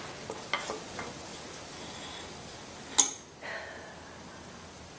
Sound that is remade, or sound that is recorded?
recorded